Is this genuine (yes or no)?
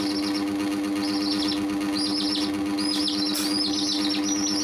yes